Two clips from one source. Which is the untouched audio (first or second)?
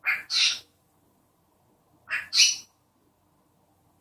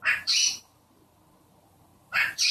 first